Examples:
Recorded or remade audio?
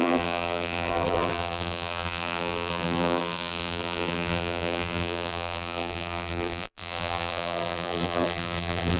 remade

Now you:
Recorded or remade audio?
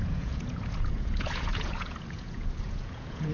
remade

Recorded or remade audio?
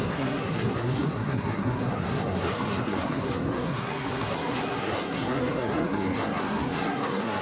remade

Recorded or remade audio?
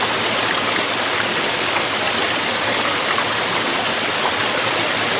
recorded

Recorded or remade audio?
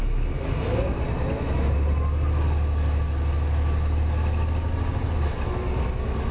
recorded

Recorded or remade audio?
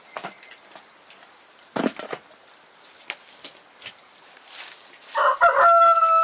recorded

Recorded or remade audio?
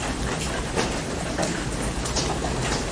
recorded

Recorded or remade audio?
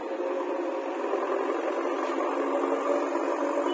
recorded